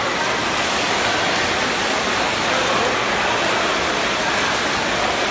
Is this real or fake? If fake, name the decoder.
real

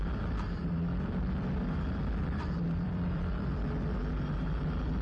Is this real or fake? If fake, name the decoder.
fake, vocoder, BigVGAN v2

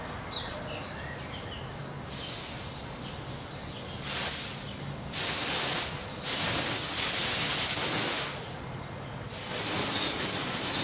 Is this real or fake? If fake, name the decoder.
real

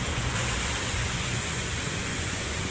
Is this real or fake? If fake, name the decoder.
fake, vocoder, Vocos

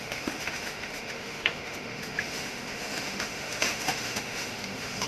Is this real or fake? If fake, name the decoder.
fake, autoencoder, DAC-VAE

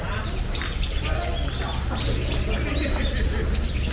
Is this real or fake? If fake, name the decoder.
real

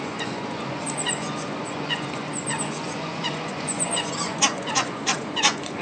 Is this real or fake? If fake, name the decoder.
fake, vocoder, Vocos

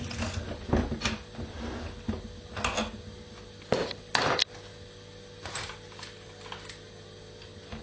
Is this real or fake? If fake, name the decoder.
real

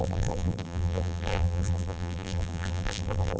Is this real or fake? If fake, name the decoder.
fake, vocoder, BigVGAN v2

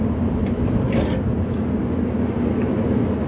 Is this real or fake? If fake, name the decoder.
real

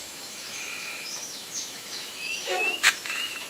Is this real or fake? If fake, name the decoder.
fake, autoencoder, DAC-VAE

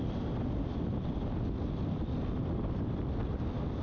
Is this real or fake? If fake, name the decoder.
real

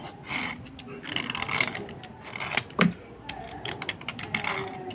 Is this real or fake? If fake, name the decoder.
real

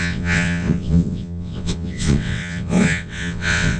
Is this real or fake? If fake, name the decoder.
fake, vocoder, WaveNeXt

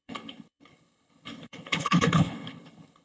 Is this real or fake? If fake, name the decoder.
fake, codec, HILCodec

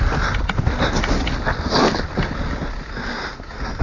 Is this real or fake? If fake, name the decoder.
real